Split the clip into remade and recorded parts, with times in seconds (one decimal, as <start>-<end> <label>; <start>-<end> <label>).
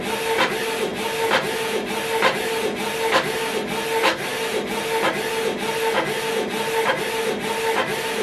0.0-0.9 recorded; 0.9-2.6 remade; 2.6-8.2 recorded